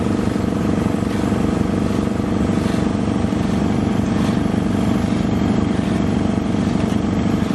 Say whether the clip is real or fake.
real